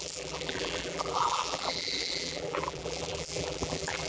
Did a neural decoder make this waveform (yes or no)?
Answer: yes